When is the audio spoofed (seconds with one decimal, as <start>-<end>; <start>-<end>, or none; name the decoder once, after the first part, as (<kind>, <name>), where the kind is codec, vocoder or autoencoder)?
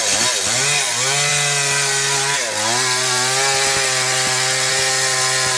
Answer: none